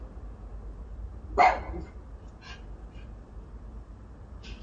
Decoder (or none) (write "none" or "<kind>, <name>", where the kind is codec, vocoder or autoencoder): none